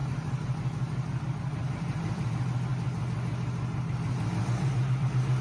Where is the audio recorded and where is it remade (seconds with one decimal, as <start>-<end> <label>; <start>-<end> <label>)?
0.0-1.2 recorded; 1.2-2.7 remade; 2.7-4.4 recorded; 4.4-5.4 remade